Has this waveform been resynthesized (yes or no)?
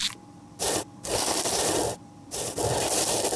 yes